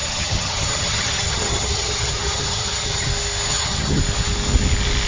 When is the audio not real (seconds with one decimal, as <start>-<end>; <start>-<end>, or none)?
0.0-3.1; 3.5-4.0